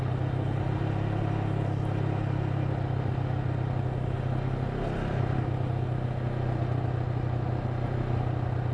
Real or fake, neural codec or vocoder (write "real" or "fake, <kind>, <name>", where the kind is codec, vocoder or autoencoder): real